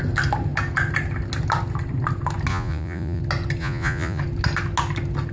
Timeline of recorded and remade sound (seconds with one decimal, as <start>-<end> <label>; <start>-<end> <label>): 0.0-2.5 recorded; 2.5-3.2 remade; 3.2-3.6 recorded; 3.6-4.2 remade; 4.2-5.3 recorded